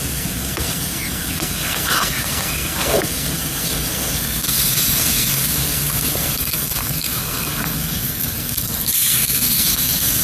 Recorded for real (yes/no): no